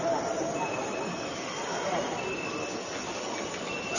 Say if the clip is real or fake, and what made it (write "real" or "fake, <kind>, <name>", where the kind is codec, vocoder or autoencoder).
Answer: real